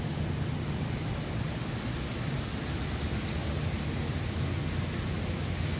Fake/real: real